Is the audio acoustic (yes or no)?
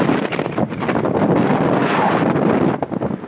yes